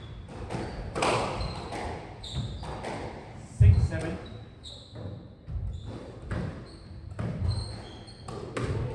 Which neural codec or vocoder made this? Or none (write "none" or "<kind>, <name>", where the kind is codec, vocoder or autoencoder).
none